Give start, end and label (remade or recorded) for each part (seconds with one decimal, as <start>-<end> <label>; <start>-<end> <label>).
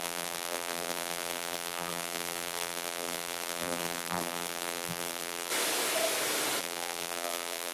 0.0-5.5 remade; 5.5-6.6 recorded; 6.6-7.7 remade